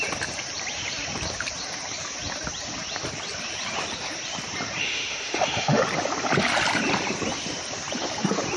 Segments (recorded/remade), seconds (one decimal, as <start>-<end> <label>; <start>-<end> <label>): 0.0-4.8 recorded; 4.8-5.8 remade; 5.8-8.6 recorded